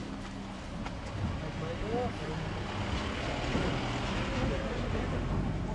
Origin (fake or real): real